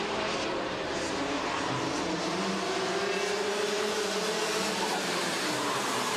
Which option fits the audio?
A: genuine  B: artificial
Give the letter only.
B